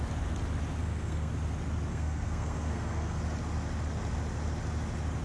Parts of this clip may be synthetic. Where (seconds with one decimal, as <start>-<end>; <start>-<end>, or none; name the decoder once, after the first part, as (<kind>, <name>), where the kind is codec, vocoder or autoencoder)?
0.8-1.3 (codec, SNAC); 1.9-3.2